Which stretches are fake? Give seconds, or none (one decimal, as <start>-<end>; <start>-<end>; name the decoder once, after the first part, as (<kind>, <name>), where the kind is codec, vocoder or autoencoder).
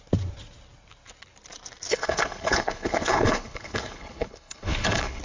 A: 1.9-5.2 (codec, HILCodec)